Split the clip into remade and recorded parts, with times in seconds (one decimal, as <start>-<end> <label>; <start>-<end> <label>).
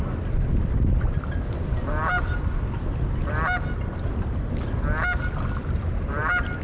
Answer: 0.0-6.6 recorded